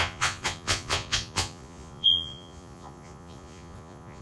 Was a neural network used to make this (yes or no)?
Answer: yes